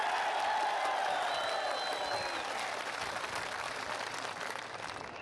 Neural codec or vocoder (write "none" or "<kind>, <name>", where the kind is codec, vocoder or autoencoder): none